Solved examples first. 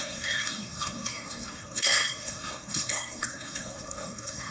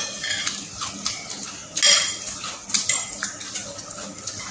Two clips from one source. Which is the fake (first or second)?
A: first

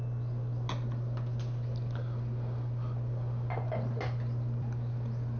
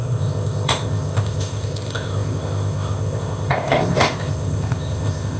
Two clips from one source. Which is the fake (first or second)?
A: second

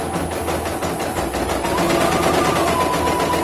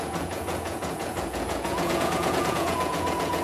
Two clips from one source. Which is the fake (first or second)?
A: second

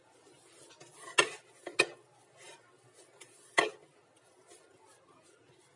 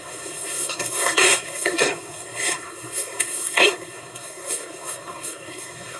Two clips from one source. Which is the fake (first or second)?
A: second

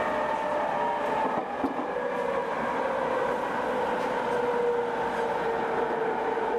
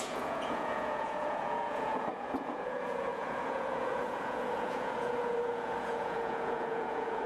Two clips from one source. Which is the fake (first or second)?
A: second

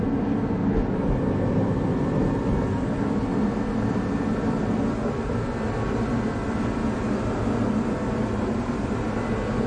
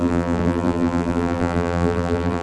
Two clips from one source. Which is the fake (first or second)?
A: second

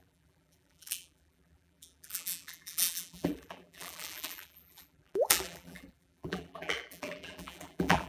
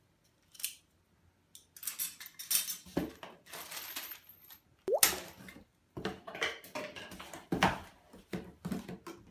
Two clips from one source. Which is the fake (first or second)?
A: first